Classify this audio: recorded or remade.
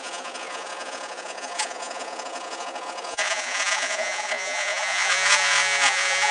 remade